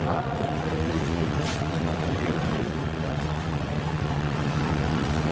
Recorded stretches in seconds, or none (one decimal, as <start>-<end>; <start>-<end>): none